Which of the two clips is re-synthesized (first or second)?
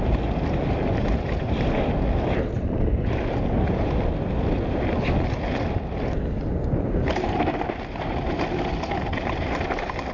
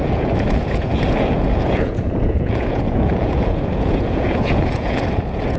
second